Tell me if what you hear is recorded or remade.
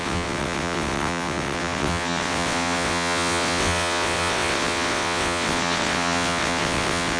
remade